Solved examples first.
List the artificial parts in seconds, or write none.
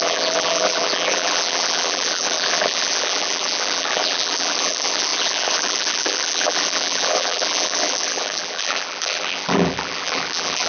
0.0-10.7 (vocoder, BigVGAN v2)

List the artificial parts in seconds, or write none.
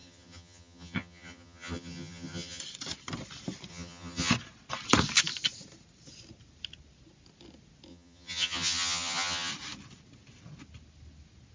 0.0-2.6 (vocoder, HiFi-GAN); 3.7-4.3; 7.9-9.5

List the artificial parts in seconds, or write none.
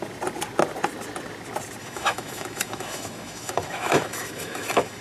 1.8-5.0 (autoencoder, DAC-VAE)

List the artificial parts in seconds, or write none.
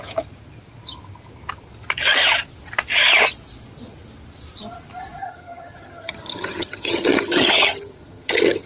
5.2-8.7 (vocoder, HiFi-GAN)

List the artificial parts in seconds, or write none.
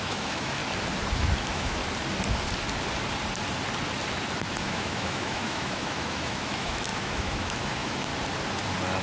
0.0-0.6 (autoencoder, DAC-VAE); 1.4-1.8; 4.6-8.1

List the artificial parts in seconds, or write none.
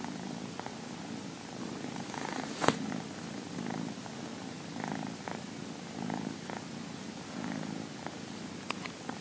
1.6-2.9 (vocoder, Vocos)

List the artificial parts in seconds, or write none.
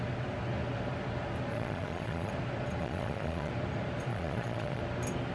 1.5-2.3 (vocoder, Vocos); 2.8-3.5; 4.1-4.8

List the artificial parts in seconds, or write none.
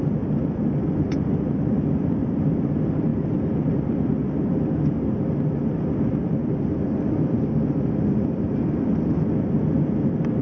0.8-1.6 (vocoder, BigVGAN v2); 3.1-4.1; 6.2-9.9